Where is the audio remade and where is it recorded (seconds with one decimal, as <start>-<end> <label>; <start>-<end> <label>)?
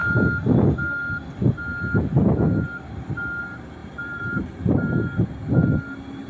0.0-3.8 recorded; 3.8-5.4 remade; 5.4-6.3 recorded